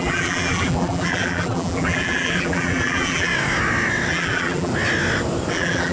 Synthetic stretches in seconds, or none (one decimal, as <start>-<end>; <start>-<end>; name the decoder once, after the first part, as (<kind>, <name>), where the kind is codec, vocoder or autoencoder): 0.0-3.3 (vocoder, BigVGAN v2); 4.1-4.7; 5.5-5.9